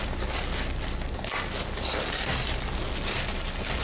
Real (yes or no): yes